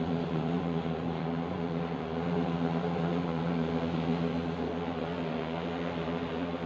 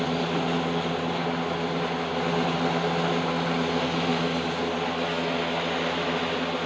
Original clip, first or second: second